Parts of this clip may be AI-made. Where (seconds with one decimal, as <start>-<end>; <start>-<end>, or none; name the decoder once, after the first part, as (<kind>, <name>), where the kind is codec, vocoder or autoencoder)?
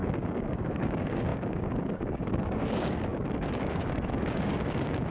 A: 0.0-5.1 (codec, DAC)